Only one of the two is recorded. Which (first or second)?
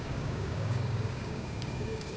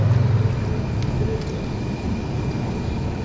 second